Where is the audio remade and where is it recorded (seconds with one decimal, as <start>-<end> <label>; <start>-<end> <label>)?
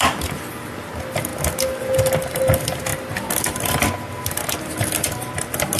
0.0-5.8 recorded